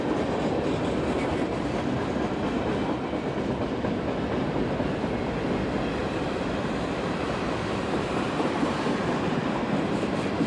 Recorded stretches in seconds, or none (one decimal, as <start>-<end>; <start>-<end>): 0.0-6.0; 10.1-10.5